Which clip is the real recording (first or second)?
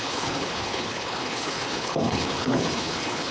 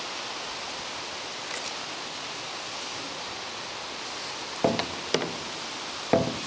second